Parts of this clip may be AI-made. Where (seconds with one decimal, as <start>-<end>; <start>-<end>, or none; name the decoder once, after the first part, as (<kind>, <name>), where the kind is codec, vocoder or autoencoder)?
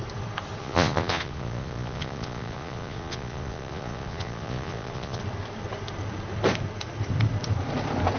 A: 0.6-5.2 (vocoder, Vocos)